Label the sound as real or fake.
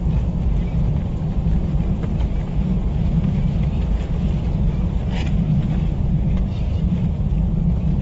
fake